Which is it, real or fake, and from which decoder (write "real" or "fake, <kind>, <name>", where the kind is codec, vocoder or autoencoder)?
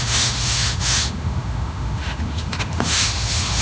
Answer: fake, autoencoder, DAC-VAE